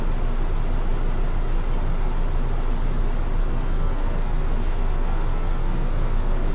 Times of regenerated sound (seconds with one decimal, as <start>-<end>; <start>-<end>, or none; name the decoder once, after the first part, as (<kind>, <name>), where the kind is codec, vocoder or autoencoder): 3.4-6.5 (codec, SNAC)